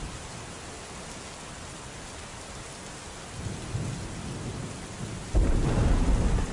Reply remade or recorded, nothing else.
recorded